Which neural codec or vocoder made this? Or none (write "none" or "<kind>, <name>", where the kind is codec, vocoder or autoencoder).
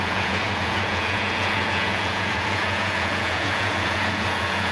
vocoder, Vocos